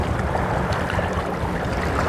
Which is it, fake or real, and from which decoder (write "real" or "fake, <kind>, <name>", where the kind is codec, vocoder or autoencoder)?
real